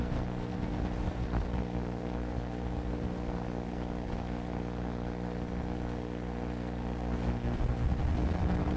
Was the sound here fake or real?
fake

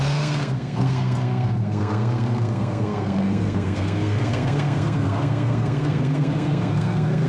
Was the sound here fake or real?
fake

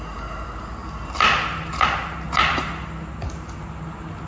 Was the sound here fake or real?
real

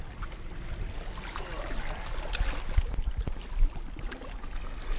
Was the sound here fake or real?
real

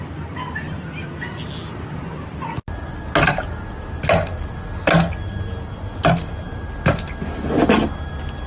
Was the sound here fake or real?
real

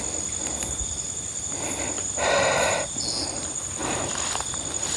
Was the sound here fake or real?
real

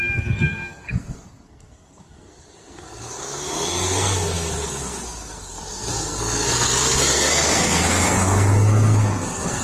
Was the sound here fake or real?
fake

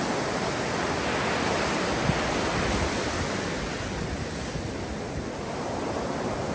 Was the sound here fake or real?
real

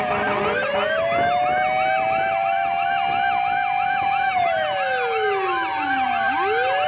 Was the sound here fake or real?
real